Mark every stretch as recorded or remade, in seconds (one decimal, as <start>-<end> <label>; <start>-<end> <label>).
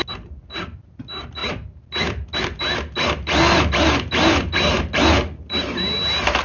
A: 0.0-6.4 recorded